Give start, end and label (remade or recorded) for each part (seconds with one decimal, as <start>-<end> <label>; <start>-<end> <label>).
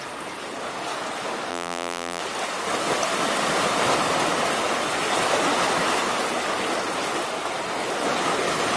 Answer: 0.0-1.5 recorded; 1.5-2.2 remade; 2.2-8.8 recorded